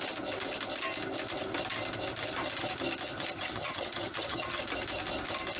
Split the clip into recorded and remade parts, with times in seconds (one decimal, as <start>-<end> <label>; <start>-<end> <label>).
0.0-3.3 recorded; 3.3-4.6 remade; 4.6-5.6 recorded